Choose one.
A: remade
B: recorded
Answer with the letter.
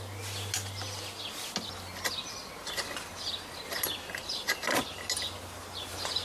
B